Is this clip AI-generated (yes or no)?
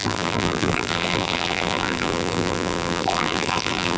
yes